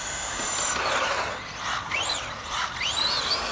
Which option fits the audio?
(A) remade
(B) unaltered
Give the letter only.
B